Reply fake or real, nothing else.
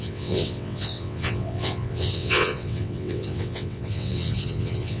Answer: fake